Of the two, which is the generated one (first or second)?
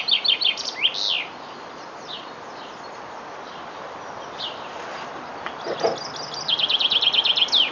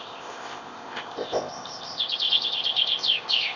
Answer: second